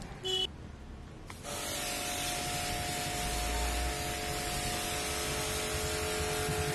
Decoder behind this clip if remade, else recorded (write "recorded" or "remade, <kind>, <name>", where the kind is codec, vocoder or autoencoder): recorded